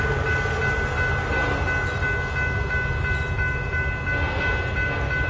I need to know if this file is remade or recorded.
recorded